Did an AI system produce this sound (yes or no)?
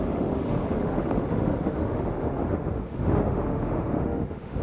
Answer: yes